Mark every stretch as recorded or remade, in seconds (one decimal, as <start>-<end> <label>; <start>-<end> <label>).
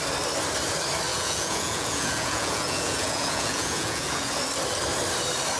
0.0-1.1 recorded; 1.1-4.4 remade; 4.4-5.6 recorded